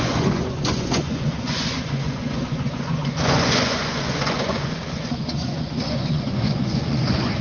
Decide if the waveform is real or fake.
fake